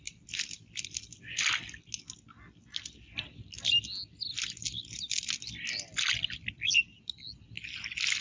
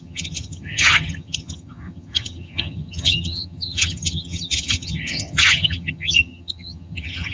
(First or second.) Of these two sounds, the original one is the first